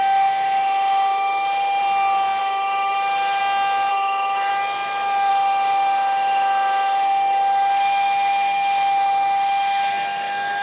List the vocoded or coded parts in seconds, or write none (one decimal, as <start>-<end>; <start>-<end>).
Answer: 0.0-1.8; 2.4-3.4; 3.9-4.5; 5.3-10.6